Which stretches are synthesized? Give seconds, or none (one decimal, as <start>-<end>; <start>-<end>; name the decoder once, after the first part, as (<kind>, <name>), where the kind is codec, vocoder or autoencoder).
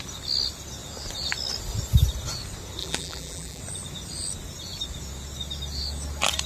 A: 2.8-3.6 (vocoder, BigVGAN v2)